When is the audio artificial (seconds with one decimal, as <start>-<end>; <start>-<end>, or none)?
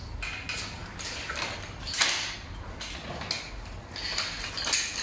none